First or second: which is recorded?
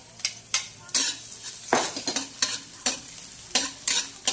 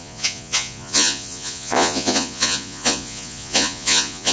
first